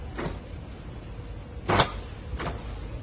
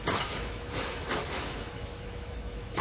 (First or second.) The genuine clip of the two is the first